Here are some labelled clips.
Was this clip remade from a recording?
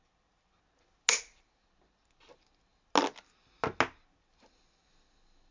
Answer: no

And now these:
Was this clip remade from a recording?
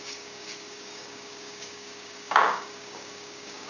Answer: yes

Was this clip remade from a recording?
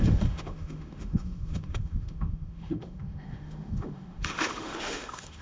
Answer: yes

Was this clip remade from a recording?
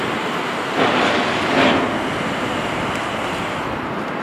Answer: no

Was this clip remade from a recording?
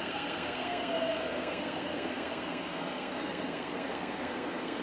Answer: yes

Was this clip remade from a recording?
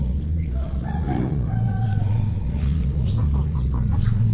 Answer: yes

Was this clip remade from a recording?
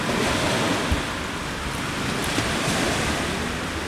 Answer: no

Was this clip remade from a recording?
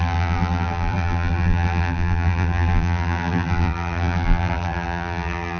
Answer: yes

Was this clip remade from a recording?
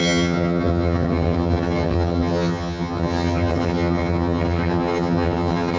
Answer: yes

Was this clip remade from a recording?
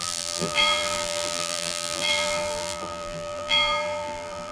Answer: yes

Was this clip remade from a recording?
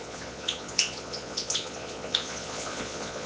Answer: yes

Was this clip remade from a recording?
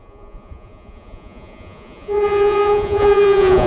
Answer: yes